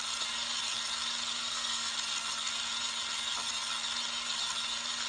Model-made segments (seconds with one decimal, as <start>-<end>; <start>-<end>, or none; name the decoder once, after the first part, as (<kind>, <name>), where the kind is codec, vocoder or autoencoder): 1.4-1.9 (codec, SNAC)